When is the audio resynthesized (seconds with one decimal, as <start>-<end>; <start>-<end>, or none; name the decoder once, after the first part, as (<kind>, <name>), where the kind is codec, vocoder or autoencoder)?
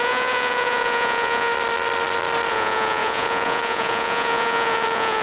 0.0-1.5 (vocoder, Vocos); 2.5-5.2